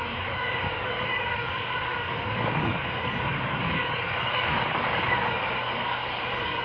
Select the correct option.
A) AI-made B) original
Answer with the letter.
A